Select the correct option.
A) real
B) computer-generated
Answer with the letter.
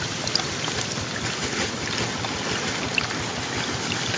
A